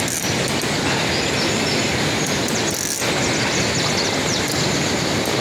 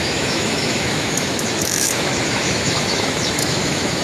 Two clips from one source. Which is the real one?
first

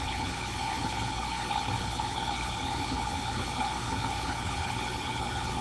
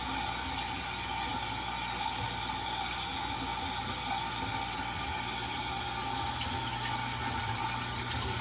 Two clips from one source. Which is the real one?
second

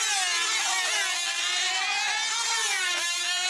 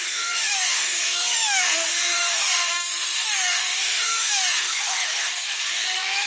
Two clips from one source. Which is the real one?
first